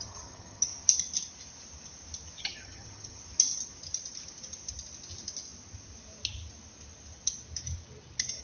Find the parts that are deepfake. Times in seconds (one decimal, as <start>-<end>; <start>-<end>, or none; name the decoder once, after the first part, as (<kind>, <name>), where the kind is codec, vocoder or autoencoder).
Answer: 0.0-0.7 (vocoder, HiFi-GAN); 2.4-3.2